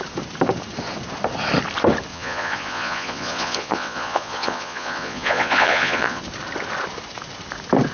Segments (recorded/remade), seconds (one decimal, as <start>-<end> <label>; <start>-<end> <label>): 0.0-2.1 recorded; 2.1-6.2 remade; 6.2-7.9 recorded